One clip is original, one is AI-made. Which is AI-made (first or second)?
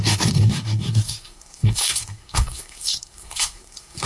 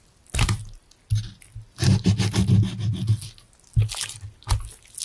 first